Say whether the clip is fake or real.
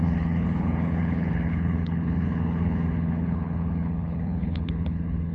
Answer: fake